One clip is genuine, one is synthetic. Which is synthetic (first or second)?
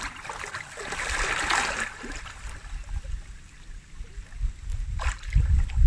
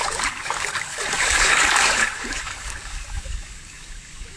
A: second